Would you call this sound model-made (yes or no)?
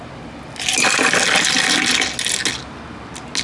no